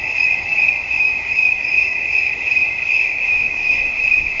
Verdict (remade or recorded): remade